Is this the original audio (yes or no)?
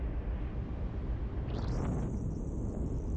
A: yes